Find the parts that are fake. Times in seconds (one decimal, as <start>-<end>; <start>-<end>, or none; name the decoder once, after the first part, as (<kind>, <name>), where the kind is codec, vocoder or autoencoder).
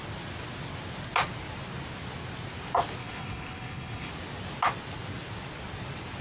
3.0-4.1 (codec, HILCodec)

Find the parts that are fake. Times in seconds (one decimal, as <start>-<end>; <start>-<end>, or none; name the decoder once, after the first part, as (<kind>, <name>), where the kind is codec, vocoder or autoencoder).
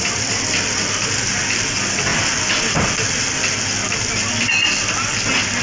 none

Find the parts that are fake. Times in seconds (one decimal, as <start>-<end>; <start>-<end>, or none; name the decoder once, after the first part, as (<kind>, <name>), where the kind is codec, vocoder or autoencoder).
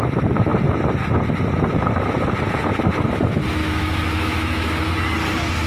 3.6-4.9 (autoencoder, DAC-VAE)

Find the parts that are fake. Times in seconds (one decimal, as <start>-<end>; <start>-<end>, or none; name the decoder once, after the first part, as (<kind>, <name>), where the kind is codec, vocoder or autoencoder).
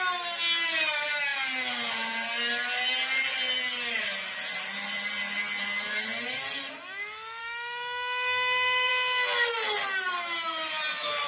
7.4-8.9 (codec, DAC)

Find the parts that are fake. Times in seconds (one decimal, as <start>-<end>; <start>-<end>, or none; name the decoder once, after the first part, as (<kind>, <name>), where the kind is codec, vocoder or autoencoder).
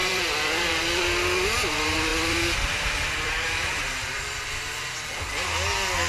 0.0-0.8 (vocoder, BigVGAN v2); 2.1-4.5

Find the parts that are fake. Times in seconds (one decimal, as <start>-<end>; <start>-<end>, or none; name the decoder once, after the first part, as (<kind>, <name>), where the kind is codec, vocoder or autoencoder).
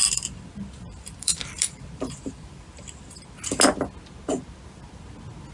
0.0-3.3 (vocoder, BigVGAN v2)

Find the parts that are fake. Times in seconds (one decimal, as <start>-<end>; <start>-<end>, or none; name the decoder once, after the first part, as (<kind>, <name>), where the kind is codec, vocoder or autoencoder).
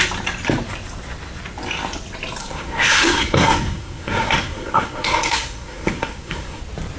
2.4-6.6 (codec, SNAC)